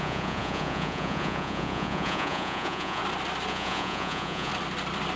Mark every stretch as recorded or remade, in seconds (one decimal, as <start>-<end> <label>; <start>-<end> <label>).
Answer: 0.0-3.0 remade; 3.0-3.5 recorded; 3.5-4.5 remade; 4.5-5.2 recorded